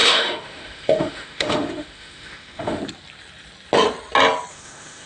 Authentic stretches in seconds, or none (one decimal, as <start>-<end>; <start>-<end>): 2.8-4.5